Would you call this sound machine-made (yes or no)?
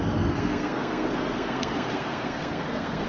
yes